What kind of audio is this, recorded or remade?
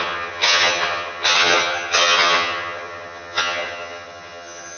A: remade